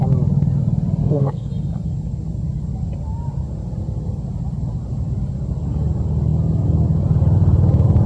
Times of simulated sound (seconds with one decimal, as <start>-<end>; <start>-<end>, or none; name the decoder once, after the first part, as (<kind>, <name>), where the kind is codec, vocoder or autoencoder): 1.0-1.5 (codec, SNAC)